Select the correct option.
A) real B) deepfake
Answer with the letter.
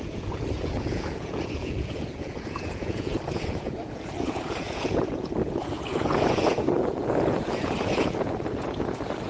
B